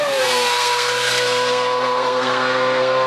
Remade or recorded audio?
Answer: remade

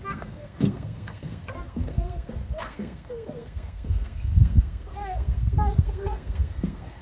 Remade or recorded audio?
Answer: remade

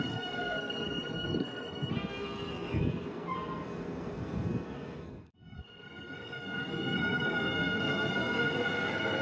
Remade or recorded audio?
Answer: remade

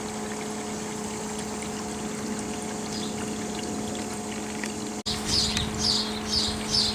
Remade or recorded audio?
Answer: recorded